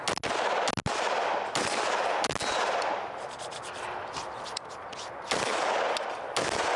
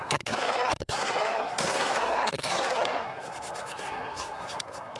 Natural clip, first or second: first